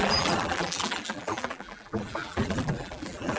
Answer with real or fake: fake